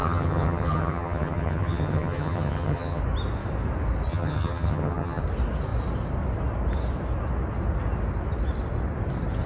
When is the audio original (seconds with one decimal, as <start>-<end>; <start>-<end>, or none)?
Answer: 3.0-4.1; 5.2-9.5